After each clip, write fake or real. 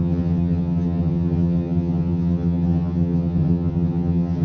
fake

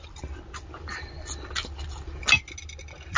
real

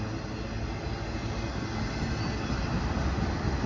real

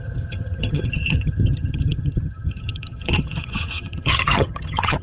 fake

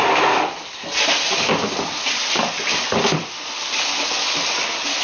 real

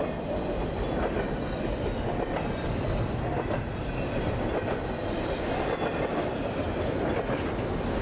real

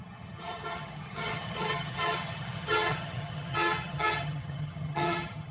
fake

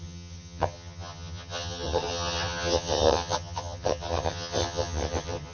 fake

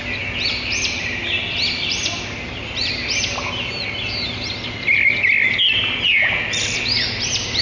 real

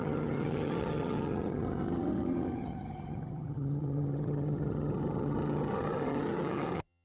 fake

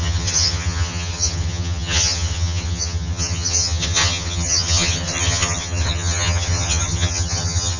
fake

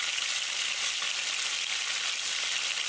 real